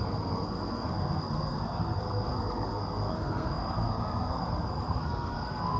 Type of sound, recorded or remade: remade